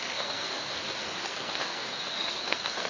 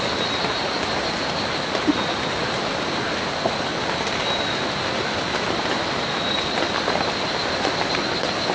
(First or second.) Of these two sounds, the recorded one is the second